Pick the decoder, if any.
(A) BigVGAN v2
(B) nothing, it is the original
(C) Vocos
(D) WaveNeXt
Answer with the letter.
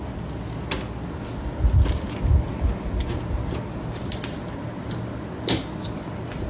B